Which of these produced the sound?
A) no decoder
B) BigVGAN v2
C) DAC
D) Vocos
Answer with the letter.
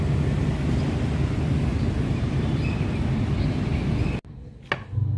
A